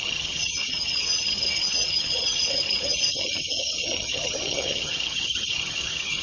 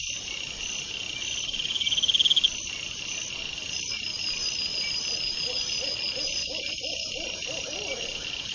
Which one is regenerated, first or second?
first